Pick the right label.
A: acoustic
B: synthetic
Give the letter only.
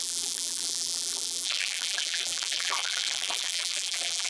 B